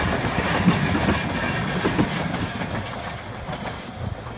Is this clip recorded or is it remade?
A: recorded